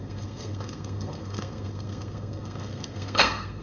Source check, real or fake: fake